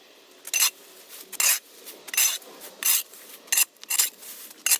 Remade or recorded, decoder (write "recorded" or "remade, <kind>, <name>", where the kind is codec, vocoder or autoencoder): recorded